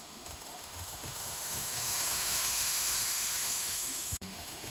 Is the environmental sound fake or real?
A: fake